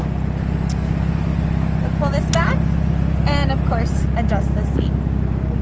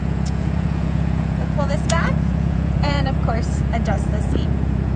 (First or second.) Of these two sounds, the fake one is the second